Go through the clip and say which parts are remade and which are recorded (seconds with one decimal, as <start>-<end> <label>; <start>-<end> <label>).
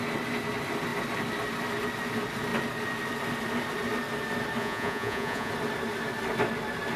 0.0-4.6 recorded; 4.6-5.5 remade; 5.5-7.0 recorded